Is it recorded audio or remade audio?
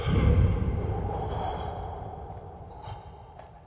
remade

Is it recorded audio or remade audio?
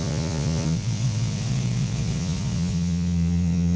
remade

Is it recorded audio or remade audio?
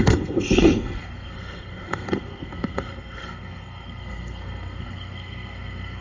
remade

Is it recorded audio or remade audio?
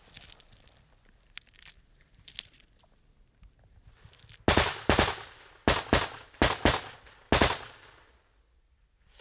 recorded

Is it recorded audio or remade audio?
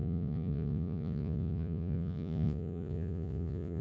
remade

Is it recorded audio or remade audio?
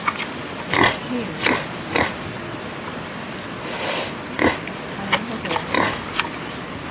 recorded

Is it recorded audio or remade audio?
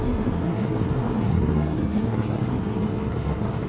remade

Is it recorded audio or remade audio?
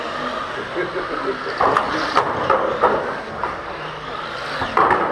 recorded